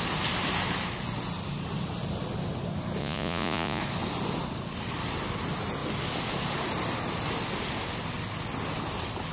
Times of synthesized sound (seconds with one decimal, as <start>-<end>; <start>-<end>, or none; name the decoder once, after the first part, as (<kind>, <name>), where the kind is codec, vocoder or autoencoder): 3.0-3.8 (vocoder, Vocos)